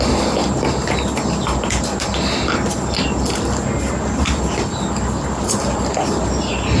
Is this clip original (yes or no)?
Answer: yes